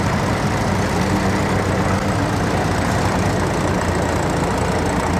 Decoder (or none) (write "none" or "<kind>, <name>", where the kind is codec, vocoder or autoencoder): none